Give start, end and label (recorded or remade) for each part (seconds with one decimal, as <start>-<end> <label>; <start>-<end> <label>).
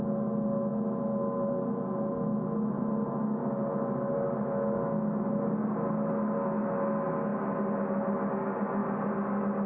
0.0-9.7 recorded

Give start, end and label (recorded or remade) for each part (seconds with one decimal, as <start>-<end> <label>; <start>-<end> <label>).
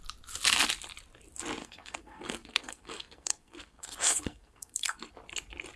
0.0-1.6 recorded; 1.6-5.1 remade; 5.1-5.8 recorded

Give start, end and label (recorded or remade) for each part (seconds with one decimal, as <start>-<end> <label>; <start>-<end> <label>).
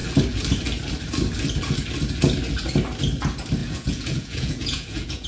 0.0-3.6 recorded; 3.6-5.3 remade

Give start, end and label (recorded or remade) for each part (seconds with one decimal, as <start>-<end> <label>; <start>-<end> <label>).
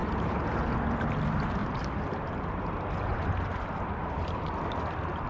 0.0-0.6 remade; 0.6-1.6 recorded; 1.6-2.6 remade; 2.6-3.1 recorded; 3.1-4.5 remade; 4.5-5.3 recorded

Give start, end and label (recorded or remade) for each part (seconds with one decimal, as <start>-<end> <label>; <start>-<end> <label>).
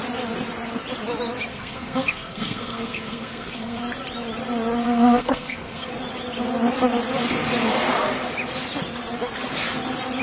0.0-1.5 recorded; 1.5-3.8 remade; 3.8-4.8 recorded; 4.8-5.9 remade; 5.9-10.2 recorded